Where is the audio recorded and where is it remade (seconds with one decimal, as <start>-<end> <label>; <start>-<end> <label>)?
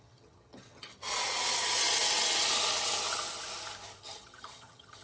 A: 0.0-1.0 remade; 1.0-4.0 recorded; 4.0-5.0 remade